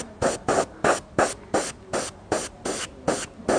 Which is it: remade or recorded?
recorded